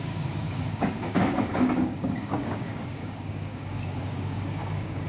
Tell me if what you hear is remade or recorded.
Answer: remade